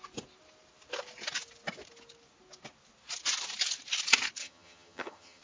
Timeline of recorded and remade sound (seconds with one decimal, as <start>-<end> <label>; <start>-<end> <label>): 0.0-4.4 recorded; 4.4-5.4 remade